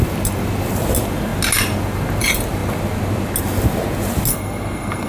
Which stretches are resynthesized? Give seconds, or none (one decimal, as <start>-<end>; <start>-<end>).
4.3-5.1

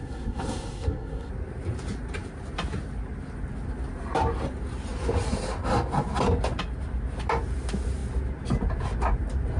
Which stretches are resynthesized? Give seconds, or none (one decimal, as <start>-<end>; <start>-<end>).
0.0-1.3

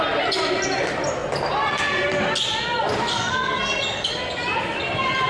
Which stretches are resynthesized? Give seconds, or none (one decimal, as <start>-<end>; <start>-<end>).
3.1-3.8

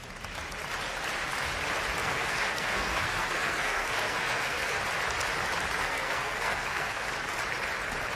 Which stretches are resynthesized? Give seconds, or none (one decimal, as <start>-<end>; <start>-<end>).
2.0-4.8; 5.8-7.1

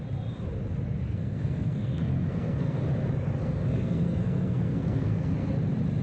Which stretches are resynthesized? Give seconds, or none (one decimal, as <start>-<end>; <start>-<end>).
1.1-2.8; 3.4-5.5

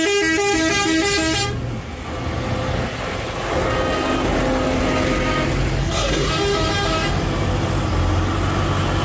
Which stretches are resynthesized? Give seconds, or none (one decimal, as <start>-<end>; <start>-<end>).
5.8-6.3

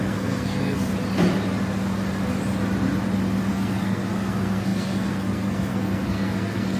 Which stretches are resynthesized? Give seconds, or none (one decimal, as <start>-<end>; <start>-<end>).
0.0-0.9; 3.5-6.8

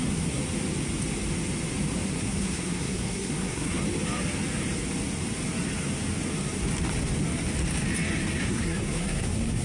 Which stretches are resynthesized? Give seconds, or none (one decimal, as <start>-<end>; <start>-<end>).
0.0-0.4; 2.1-3.8; 8.4-9.6